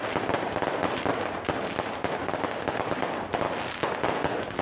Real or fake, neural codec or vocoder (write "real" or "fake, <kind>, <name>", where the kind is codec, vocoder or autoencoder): real